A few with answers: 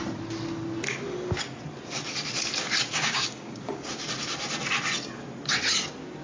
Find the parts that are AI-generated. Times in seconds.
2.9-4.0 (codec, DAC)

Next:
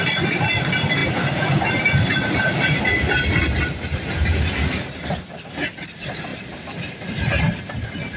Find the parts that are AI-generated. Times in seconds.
none

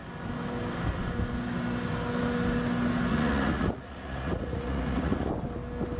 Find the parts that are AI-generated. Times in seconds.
3.1-5.3 (vocoder, Vocos)

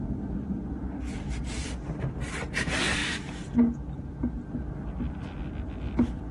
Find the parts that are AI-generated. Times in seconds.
none